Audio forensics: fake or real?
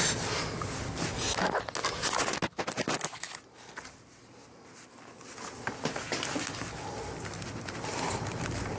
real